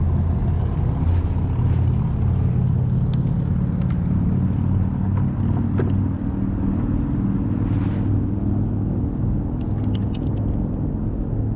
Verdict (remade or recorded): recorded